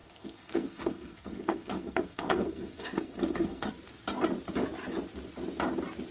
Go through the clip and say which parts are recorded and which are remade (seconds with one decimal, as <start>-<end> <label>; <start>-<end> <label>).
0.0-3.7 remade; 3.7-6.1 recorded